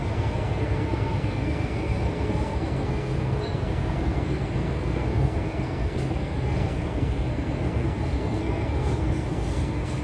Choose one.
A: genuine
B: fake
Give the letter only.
B